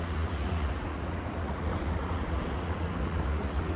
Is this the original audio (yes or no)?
no